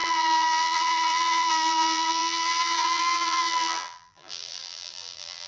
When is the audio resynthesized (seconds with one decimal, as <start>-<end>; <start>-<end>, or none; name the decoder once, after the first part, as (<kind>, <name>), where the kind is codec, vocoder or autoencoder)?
0.0-5.5 (vocoder, BigVGAN v2)